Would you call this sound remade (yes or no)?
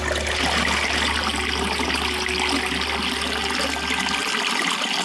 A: no